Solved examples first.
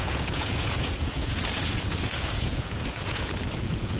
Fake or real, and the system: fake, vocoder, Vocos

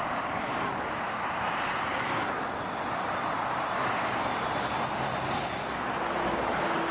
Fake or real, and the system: real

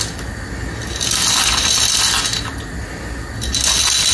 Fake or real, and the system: real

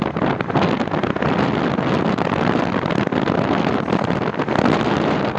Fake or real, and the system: real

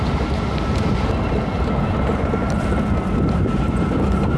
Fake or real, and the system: real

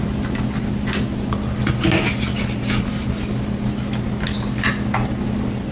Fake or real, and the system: real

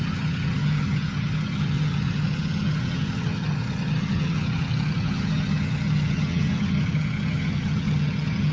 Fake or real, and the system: fake, vocoder, HiFi-GAN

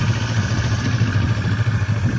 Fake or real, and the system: real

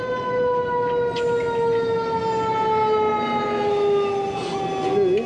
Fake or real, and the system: real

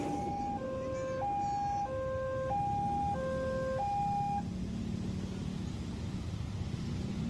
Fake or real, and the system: real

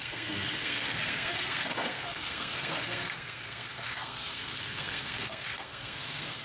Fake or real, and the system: fake, codec, SNAC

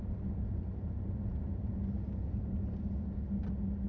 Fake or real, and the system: real